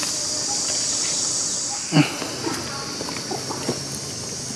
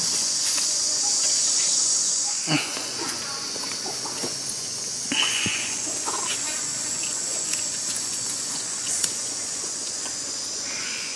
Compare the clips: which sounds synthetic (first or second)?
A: second